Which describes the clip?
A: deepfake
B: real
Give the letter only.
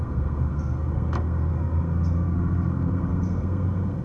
A